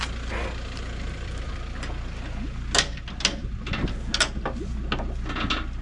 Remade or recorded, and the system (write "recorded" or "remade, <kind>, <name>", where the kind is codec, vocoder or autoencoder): recorded